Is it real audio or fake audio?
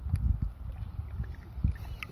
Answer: real